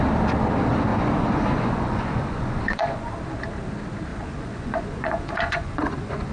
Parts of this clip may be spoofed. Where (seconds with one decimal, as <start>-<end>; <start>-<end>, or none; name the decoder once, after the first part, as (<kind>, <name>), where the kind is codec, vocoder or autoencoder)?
0.9-3.1 (vocoder, Vocos); 4.1-6.3